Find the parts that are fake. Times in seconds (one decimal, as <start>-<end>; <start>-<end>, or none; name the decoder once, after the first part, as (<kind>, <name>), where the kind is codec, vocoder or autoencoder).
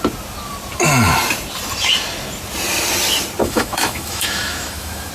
3.4-5.1 (autoencoder, DAC-VAE)